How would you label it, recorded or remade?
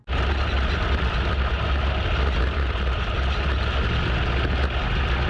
recorded